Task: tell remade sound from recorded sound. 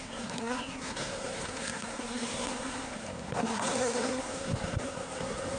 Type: remade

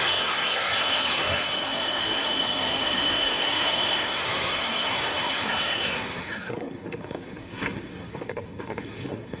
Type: remade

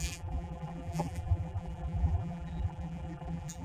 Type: remade